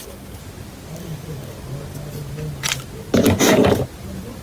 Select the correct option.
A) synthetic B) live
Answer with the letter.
B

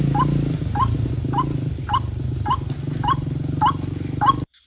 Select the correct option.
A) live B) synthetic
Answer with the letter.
A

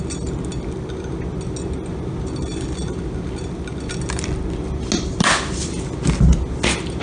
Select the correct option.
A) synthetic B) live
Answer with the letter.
B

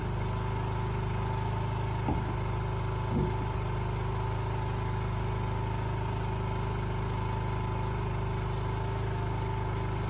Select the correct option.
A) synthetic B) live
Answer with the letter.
B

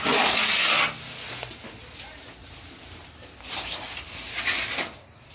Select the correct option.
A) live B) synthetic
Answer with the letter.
A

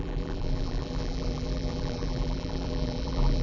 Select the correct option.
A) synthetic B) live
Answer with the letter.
A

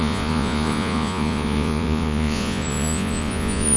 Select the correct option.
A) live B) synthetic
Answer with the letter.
B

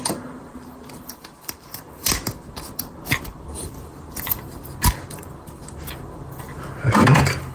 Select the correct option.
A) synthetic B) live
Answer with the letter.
A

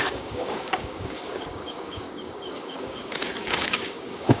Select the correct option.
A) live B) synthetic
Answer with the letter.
B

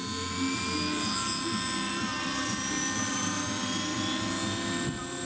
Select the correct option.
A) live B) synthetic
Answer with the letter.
A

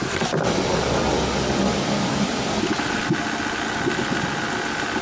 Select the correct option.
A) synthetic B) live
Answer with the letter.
B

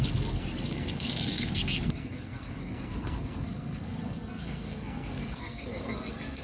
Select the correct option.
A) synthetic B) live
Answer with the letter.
A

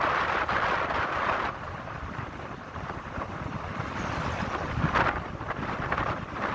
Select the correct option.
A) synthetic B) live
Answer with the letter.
B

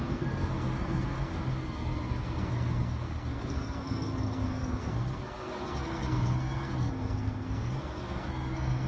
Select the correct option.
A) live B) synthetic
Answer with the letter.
B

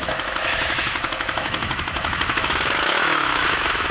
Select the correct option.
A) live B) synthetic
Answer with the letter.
B